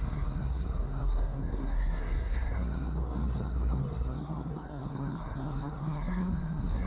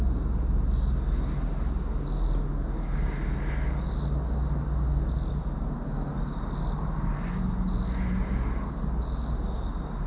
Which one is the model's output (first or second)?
first